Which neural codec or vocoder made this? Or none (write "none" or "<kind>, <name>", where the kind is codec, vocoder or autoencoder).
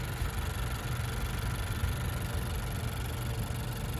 none